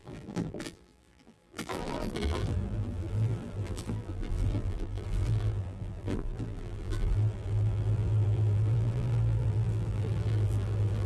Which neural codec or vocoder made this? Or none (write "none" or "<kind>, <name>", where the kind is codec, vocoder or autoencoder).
vocoder, BigVGAN v2